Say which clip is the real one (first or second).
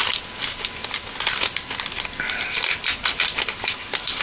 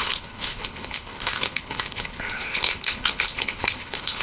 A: first